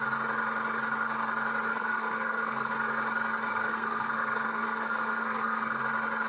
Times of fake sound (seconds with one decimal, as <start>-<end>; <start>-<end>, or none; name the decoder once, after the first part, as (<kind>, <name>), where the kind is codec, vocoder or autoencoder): 1.7-2.7 (codec, SNAC); 3.5-5.8